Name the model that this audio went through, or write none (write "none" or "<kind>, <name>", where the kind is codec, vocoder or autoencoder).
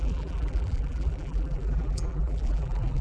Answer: vocoder, BigVGAN v2